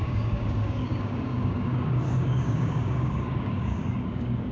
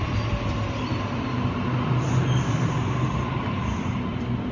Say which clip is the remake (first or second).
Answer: first